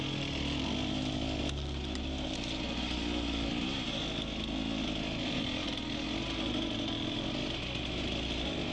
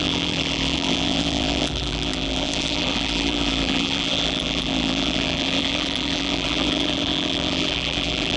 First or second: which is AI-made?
second